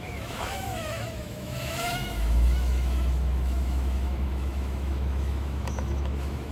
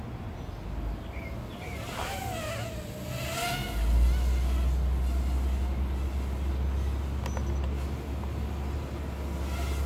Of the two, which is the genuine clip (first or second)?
second